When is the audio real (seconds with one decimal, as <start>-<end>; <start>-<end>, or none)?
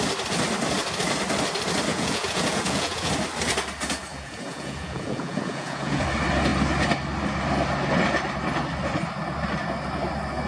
0.0-1.9; 3.1-4.1; 6.0-10.5